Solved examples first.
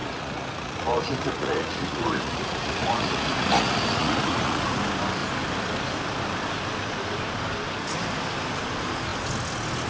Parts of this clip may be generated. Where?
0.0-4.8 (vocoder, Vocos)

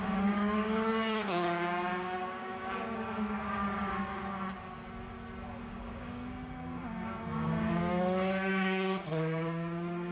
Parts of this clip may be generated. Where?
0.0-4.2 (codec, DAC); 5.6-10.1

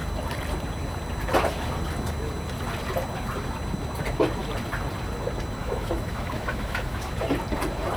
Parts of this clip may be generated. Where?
5.6-7.1 (autoencoder, DAC-VAE)